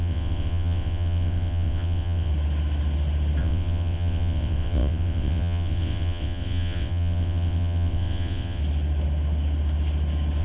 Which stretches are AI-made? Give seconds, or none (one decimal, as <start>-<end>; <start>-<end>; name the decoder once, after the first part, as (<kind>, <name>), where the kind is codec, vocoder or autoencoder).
0.0-2.3 (vocoder, WaveNeXt); 3.4-8.6